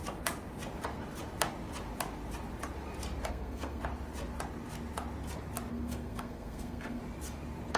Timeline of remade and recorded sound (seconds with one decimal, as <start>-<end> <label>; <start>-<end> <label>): 0.0-3.3 recorded; 3.3-3.8 remade; 3.8-5.7 recorded; 5.7-7.0 remade; 7.0-7.8 recorded